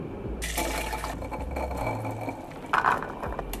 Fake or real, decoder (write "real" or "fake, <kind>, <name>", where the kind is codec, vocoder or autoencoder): real